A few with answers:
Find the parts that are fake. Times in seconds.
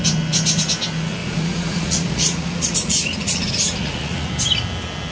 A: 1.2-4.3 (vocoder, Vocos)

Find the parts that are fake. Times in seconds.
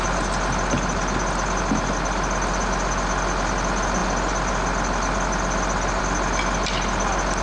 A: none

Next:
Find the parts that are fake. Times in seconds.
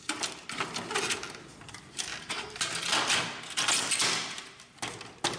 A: none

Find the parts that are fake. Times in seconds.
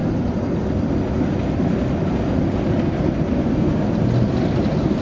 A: none